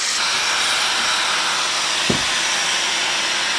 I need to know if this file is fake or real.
real